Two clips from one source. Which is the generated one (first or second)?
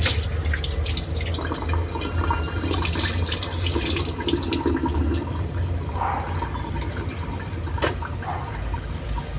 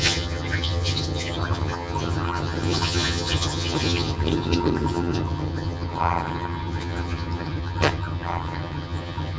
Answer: second